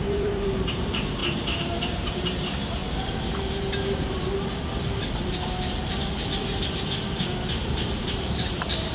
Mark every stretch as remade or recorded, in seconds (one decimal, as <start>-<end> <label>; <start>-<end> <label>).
0.0-2.8 remade; 2.8-7.7 recorded; 7.7-8.9 remade

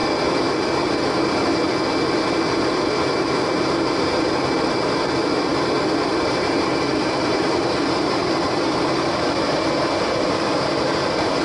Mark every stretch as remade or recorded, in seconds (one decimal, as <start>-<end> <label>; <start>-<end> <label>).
0.0-3.2 recorded; 3.2-5.5 remade; 5.5-6.1 recorded; 6.1-11.4 remade

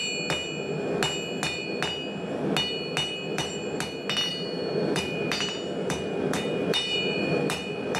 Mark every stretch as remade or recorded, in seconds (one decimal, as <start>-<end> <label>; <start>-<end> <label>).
0.0-3.3 recorded; 3.3-3.8 remade; 3.8-4.3 recorded; 4.3-8.0 remade

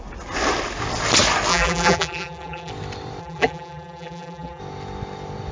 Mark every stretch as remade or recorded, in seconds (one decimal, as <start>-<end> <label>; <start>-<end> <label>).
0.0-1.5 recorded; 1.5-2.7 remade; 2.7-3.2 recorded; 3.2-4.6 remade; 4.6-5.5 recorded

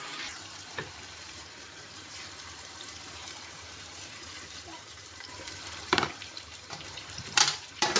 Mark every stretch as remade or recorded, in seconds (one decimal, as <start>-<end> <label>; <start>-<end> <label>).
0.0-8.0 remade

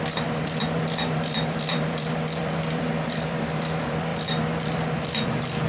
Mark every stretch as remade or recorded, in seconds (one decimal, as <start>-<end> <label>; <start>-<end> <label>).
0.0-5.7 remade